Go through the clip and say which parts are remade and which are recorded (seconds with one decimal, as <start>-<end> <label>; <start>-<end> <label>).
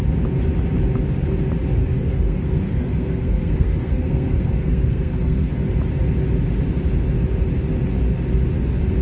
0.0-1.8 recorded; 1.8-5.5 remade; 5.5-9.0 recorded